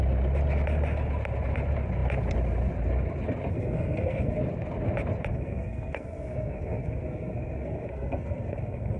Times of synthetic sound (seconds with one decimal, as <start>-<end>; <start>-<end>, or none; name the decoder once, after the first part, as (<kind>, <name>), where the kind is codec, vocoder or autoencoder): 3.5-4.4 (codec, SNAC); 5.3-9.0